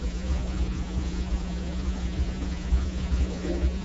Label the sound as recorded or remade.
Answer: remade